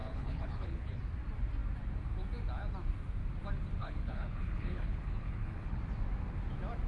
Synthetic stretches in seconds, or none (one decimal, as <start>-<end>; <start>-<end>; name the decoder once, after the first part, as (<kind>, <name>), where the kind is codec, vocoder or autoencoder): 0.0-1.0 (codec, HILCodec); 3.8-5.8